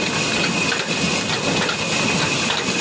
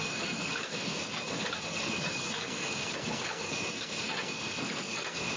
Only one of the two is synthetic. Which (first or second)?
second